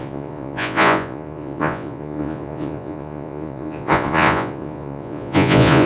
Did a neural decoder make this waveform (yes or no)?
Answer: yes